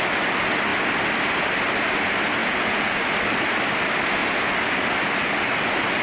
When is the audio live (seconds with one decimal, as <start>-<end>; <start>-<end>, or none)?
0.0-2.4; 3.0-6.0